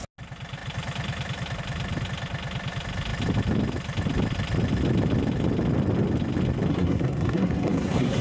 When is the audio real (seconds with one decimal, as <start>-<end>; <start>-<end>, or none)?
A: 0.0-6.7